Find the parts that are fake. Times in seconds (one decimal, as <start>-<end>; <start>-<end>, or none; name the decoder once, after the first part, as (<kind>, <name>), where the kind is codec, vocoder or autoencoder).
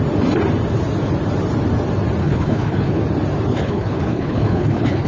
2.2-3.0 (codec, HILCodec); 3.5-5.1